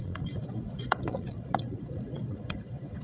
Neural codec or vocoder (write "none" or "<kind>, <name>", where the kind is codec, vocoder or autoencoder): vocoder, Vocos